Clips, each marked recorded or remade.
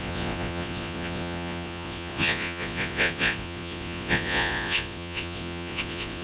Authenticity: remade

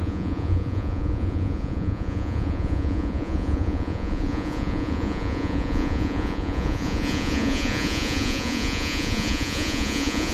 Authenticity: remade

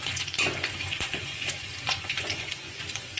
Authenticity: remade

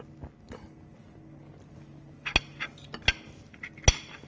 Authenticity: recorded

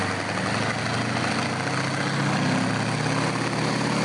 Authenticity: recorded